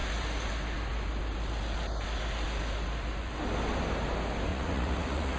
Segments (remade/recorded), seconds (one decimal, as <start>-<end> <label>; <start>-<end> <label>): 0.0-4.5 recorded; 4.5-5.4 remade